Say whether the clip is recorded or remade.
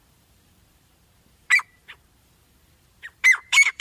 remade